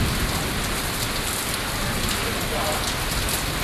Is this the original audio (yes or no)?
yes